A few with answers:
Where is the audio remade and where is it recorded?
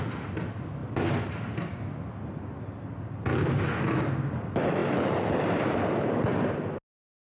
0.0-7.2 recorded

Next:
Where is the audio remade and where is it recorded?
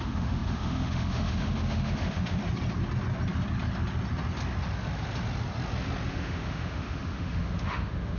0.0-2.4 remade; 2.4-6.1 recorded; 6.1-8.2 remade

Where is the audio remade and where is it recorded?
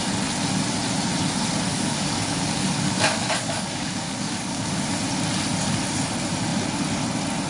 0.0-1.7 recorded; 1.7-4.8 remade; 4.8-7.5 recorded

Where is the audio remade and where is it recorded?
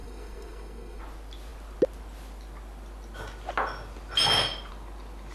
0.0-1.0 remade; 1.0-5.3 recorded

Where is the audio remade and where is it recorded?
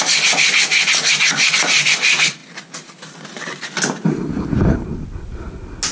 0.0-5.9 recorded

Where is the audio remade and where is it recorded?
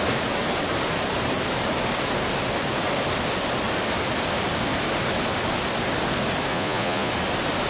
0.0-6.5 recorded; 6.5-7.1 remade; 7.1-7.7 recorded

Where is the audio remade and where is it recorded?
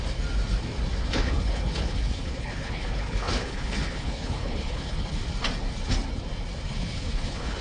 0.0-1.0 recorded; 1.0-5.2 remade; 5.2-6.7 recorded; 6.7-7.6 remade